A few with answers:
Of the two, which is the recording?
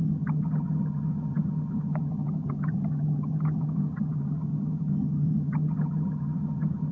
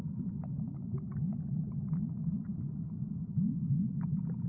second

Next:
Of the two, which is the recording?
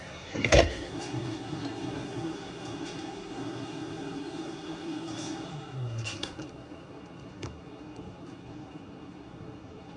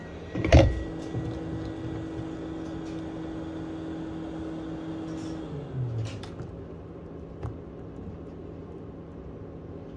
second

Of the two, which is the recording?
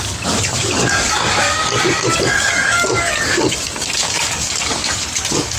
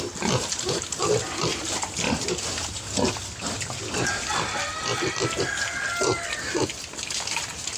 second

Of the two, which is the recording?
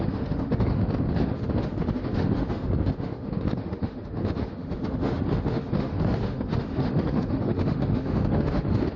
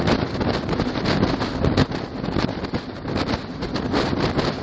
second